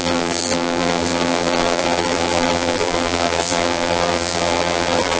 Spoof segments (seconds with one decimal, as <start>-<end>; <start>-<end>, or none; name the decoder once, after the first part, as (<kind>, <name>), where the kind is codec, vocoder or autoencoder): 0.0-5.2 (vocoder, BigVGAN v2)